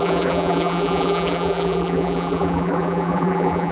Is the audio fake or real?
fake